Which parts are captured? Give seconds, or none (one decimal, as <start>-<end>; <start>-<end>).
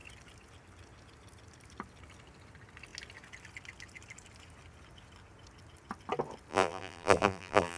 0.0-6.5